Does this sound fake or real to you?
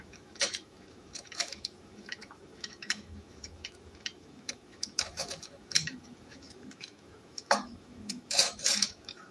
fake